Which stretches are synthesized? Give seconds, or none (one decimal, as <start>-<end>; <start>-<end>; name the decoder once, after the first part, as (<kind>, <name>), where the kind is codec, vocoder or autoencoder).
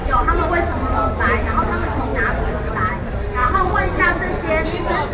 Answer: 0.0-0.5 (vocoder, WaveNeXt); 3.4-4.0